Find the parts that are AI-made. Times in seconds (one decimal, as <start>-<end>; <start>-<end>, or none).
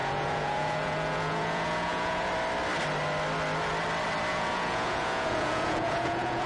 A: 0.0-2.3; 4.3-6.5